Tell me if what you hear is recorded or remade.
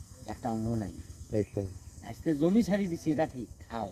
remade